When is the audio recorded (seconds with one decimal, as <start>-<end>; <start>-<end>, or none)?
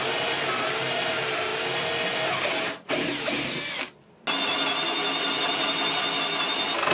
0.0-6.9